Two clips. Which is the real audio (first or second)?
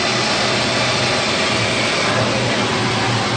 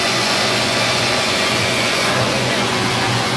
first